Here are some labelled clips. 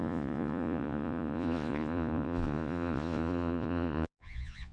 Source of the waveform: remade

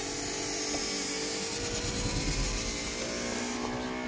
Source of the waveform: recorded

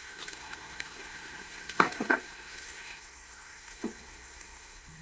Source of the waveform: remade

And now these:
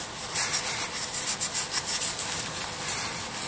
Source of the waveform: recorded